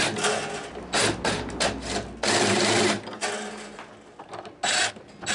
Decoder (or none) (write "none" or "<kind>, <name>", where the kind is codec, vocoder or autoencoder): none